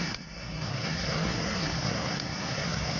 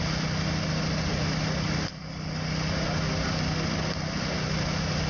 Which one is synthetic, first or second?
first